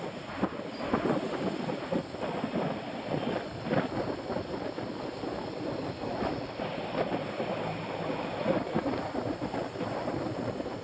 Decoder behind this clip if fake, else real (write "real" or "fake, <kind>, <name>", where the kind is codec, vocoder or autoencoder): real